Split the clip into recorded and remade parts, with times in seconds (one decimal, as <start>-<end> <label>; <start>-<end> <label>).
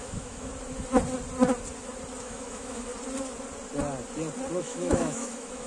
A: 0.0-0.5 remade; 0.5-2.2 recorded; 2.2-2.9 remade; 2.9-4.6 recorded; 4.6-5.7 remade